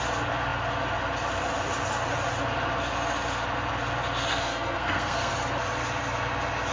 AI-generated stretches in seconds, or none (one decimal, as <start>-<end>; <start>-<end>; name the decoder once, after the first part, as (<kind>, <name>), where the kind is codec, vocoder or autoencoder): 4.3-5.3 (codec, SNAC)